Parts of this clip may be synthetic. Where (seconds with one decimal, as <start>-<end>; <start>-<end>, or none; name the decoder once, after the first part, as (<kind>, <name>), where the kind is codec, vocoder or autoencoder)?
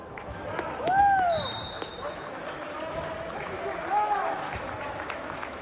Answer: 0.0-1.0 (autoencoder, DAC-VAE); 1.9-5.6